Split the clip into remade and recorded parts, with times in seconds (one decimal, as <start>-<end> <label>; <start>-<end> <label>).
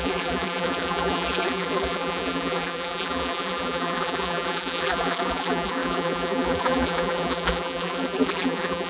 0.0-8.9 remade